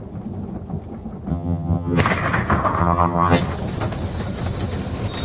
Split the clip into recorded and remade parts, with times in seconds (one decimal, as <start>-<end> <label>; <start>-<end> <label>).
0.0-1.3 recorded; 1.3-2.0 remade; 2.0-2.8 recorded; 2.8-3.4 remade; 3.4-5.2 recorded